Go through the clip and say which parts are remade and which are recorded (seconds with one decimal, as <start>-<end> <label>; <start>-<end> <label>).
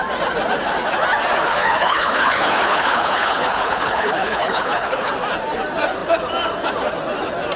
0.0-1.5 recorded; 1.5-5.1 remade; 5.1-7.6 recorded